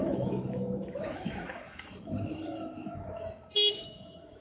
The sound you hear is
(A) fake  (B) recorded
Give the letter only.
A